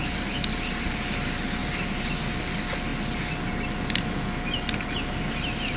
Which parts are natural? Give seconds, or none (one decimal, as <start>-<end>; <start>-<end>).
0.0-5.8